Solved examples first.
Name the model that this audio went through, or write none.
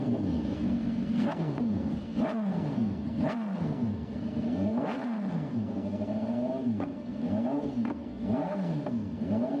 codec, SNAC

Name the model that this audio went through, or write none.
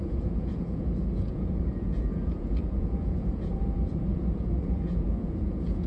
vocoder, Vocos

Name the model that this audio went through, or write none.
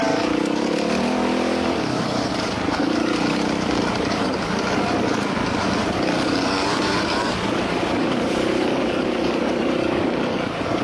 codec, DAC